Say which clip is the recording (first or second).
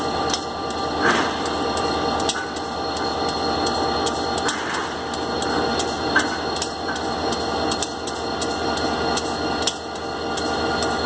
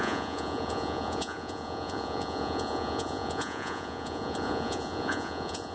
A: first